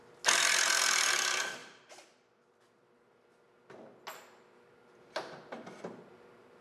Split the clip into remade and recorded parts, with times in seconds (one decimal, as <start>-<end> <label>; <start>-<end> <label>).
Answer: 0.0-6.6 recorded